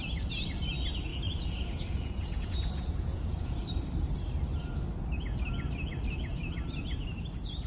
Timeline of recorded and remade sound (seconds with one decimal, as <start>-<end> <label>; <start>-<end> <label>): 0.0-1.1 recorded; 1.1-3.8 remade; 3.8-7.7 recorded